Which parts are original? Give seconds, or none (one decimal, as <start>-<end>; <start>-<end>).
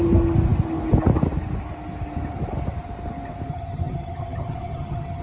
0.0-3.5